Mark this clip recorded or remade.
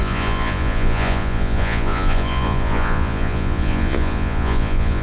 remade